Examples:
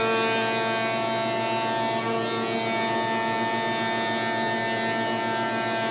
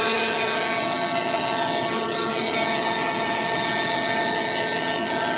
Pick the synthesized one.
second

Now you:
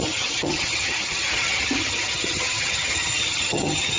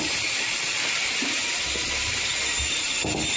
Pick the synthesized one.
first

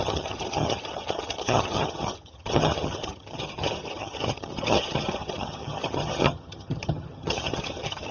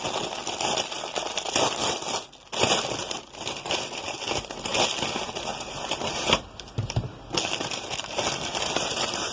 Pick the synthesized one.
first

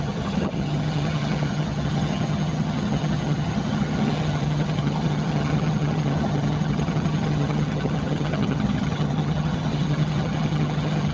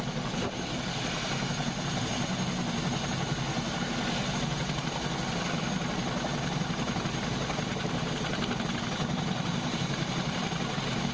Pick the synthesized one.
first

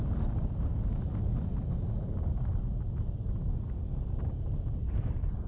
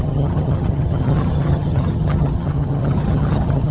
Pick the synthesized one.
second